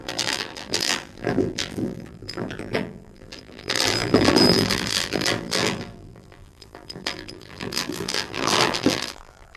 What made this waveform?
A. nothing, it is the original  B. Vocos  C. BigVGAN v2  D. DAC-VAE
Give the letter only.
C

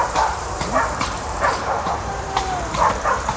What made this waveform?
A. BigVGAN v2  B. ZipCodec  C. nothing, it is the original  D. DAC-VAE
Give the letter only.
A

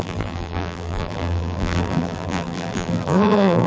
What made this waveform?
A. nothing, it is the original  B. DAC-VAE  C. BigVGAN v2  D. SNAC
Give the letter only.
C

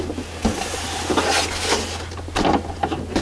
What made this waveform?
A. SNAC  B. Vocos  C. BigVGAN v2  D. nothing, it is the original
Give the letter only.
D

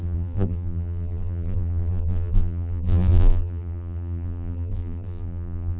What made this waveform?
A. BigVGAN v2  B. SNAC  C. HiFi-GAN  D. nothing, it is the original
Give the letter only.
A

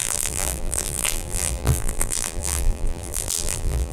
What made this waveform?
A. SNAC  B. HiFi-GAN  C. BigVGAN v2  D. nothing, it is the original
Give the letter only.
C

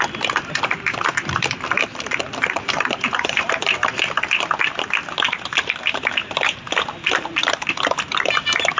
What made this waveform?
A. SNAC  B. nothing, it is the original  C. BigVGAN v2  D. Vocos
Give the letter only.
C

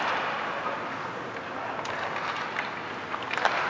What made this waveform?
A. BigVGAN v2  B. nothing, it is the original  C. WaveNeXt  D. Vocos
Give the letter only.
B